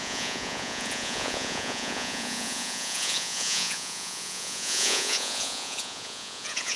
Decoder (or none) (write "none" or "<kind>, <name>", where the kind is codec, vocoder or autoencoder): vocoder, Vocos